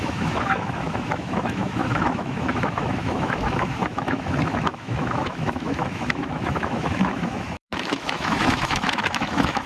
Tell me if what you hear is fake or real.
fake